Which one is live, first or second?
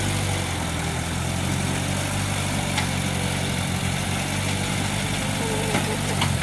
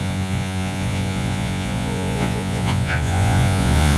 first